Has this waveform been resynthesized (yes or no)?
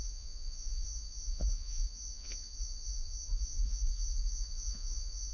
yes